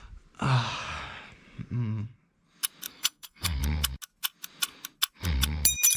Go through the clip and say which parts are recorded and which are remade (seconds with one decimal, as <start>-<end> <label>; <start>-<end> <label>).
0.0-2.9 recorded; 2.9-3.6 remade; 3.6-6.0 recorded